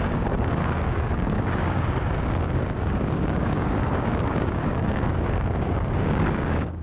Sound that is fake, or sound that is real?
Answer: fake